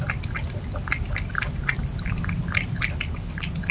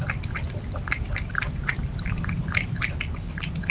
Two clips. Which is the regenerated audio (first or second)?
second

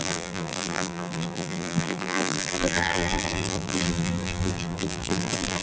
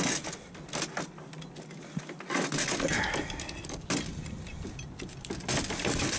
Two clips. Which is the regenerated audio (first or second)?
first